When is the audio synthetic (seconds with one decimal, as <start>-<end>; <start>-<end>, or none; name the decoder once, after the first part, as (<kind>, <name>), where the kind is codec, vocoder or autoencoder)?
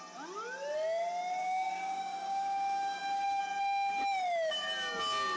1.4-3.4 (codec, DAC)